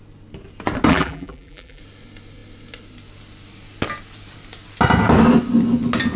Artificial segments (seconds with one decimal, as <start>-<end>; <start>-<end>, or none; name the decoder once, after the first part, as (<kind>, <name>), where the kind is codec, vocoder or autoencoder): 0.9-1.8 (vocoder, BigVGAN v2)